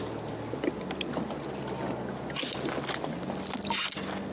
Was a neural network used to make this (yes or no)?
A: no